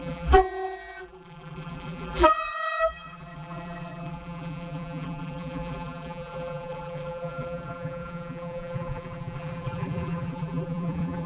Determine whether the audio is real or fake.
fake